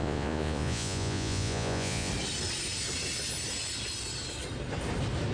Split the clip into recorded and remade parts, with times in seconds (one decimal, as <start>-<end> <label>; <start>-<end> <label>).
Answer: 0.0-2.1 remade; 2.1-5.3 recorded